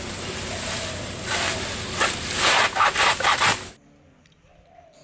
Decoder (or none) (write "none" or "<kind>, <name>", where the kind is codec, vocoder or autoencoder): none